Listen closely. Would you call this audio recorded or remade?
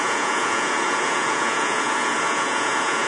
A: remade